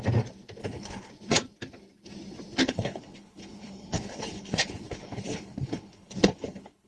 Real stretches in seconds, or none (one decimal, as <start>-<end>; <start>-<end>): 0.0-0.6; 1.1-2.6